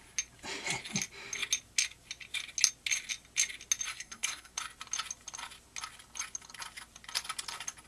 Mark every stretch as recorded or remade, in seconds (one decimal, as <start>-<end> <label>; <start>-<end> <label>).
0.0-3.9 recorded; 3.9-4.5 remade; 4.5-7.9 recorded